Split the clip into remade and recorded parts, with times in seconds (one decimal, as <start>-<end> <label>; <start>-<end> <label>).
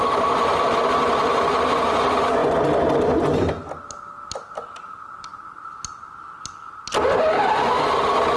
0.0-8.4 recorded